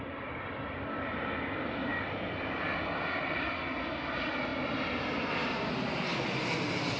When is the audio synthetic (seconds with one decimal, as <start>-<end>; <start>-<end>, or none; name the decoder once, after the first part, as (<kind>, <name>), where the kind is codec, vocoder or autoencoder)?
1.9-2.4 (vocoder, BigVGAN v2)